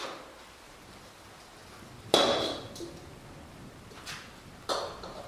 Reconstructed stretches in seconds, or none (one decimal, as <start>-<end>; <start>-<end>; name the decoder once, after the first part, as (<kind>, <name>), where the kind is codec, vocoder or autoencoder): none